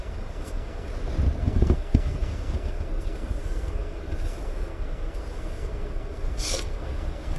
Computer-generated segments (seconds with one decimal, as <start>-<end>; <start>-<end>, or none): 0.0-0.9; 1.4-7.4